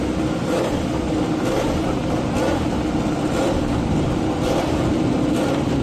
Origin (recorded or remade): recorded